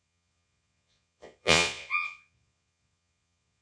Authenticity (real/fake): fake